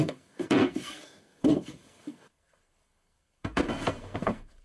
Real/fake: fake